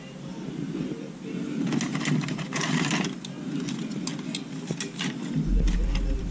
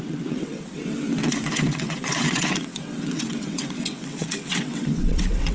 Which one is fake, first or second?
second